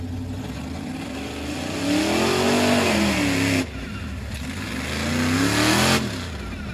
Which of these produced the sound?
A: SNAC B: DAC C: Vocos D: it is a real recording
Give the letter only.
D